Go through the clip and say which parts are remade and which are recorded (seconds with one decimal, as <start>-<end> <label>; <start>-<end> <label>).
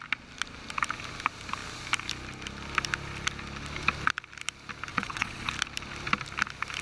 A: 0.0-4.9 recorded; 4.9-5.5 remade; 5.5-6.8 recorded